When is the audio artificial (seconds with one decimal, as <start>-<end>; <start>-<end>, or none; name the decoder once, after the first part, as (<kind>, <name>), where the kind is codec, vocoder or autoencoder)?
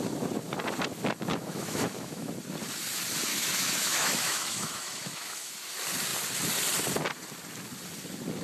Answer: 1.3-2.3 (autoencoder, DAC-VAE); 3.3-5.5